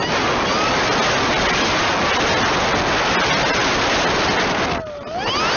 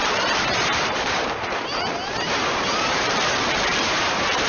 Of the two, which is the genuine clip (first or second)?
first